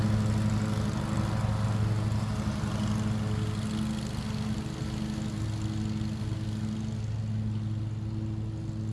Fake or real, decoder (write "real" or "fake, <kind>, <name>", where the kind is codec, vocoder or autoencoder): real